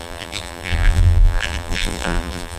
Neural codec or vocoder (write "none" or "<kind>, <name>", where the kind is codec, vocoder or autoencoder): vocoder, BigVGAN v2